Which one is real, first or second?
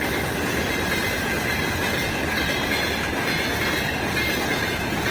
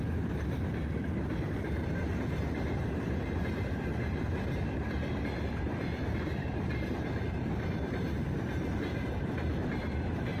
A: first